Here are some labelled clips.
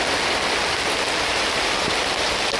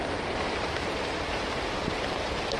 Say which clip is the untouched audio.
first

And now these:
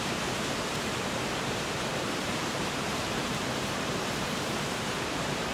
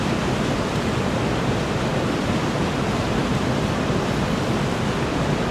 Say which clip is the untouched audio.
second